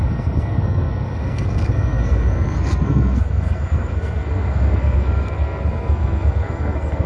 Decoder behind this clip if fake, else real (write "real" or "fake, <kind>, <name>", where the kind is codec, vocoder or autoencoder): fake, codec, SNAC